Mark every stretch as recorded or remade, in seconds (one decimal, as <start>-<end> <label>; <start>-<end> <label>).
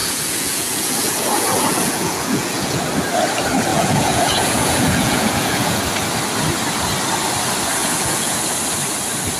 0.0-2.8 remade; 2.8-3.7 recorded; 3.7-5.8 remade; 5.8-7.8 recorded; 7.8-8.4 remade; 8.4-9.4 recorded